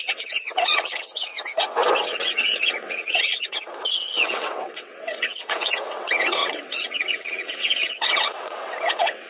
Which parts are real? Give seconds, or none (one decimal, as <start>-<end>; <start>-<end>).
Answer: none